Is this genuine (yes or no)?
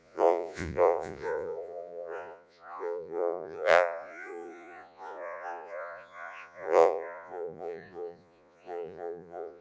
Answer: no